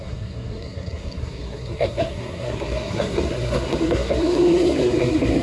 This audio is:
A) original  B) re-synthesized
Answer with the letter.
B